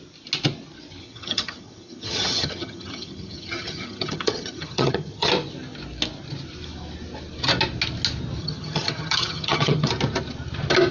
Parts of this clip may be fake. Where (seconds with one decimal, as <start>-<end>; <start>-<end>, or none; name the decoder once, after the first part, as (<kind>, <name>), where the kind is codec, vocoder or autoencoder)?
1.0-5.3 (vocoder, HiFi-GAN); 8.4-9.9